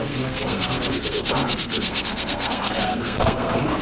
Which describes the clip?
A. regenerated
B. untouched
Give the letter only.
A